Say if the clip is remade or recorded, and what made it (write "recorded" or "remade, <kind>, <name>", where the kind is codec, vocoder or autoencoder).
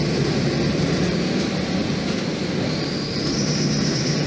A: remade, vocoder, BigVGAN v2